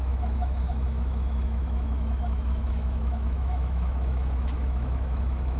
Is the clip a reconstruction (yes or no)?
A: yes